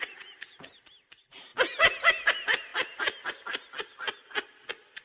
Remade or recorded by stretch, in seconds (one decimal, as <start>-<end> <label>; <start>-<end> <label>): 0.0-5.0 recorded